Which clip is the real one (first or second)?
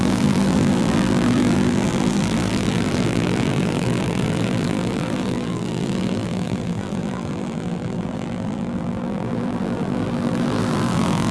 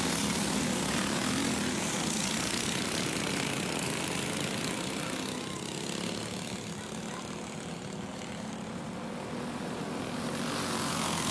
second